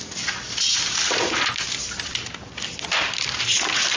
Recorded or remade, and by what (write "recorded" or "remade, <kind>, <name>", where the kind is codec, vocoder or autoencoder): recorded